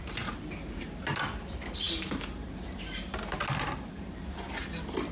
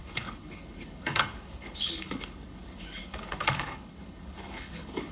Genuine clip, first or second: first